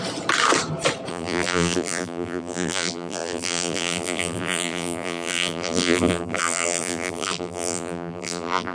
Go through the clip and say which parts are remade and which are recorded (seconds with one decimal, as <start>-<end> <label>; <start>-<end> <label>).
0.0-1.1 recorded; 1.1-8.7 remade